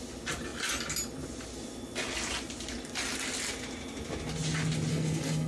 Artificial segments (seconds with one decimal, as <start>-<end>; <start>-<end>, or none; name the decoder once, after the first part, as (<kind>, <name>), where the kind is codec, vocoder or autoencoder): 4.9-5.5 (codec, SNAC)